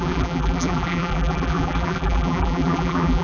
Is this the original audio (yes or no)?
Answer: no